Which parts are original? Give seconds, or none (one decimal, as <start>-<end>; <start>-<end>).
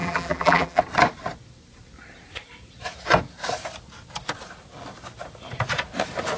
0.8-6.4